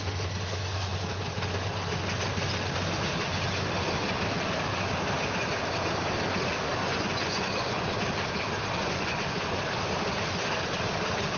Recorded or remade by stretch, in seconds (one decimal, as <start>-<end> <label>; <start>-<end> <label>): 0.0-6.8 recorded; 6.8-7.9 remade; 7.9-8.8 recorded; 8.8-9.6 remade; 9.6-11.4 recorded